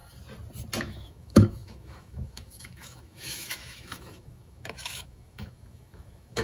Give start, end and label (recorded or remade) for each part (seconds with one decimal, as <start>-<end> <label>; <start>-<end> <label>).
0.0-0.8 recorded; 0.8-6.4 remade